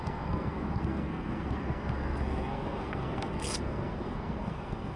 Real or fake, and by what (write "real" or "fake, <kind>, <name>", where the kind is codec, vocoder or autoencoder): fake, codec, SNAC